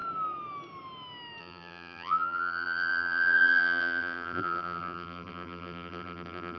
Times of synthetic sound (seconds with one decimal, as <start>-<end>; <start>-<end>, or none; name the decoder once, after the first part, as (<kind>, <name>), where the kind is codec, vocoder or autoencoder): 1.4-6.6 (vocoder, BigVGAN v2)